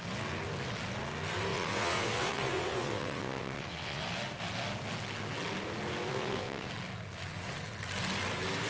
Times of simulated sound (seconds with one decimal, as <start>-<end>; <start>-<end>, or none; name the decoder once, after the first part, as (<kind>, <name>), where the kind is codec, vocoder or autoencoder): 1.5-4.0 (vocoder, WaveNeXt); 6.1-6.7